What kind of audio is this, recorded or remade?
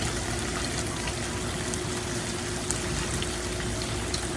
recorded